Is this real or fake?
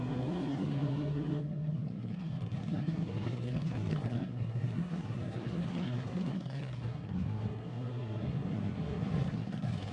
fake